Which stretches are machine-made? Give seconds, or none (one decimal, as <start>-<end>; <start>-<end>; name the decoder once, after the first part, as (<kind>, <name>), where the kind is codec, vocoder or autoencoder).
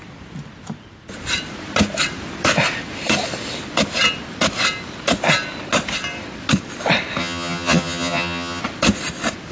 7.2-8.6 (vocoder, HiFi-GAN)